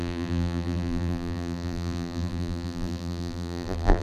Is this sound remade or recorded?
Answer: remade